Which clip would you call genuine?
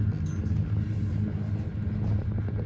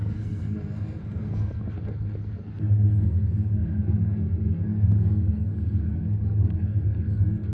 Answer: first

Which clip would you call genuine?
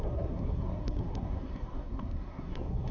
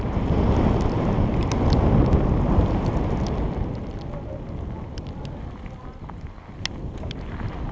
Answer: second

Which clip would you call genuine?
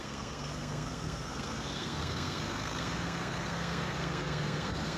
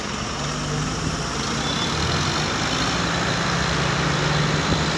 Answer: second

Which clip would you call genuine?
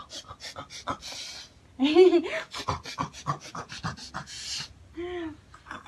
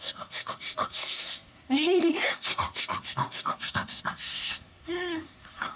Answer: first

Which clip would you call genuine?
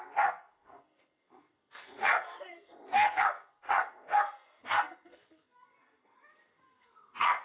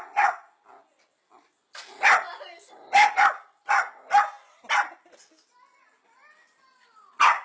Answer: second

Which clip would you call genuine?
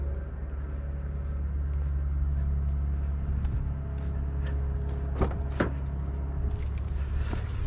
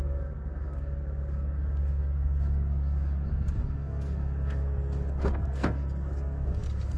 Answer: first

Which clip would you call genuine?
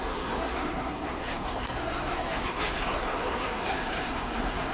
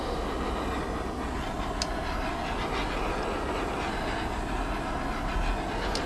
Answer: second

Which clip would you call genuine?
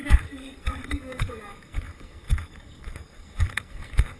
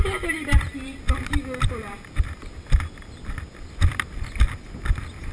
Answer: second